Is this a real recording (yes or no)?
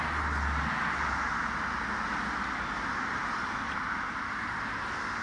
yes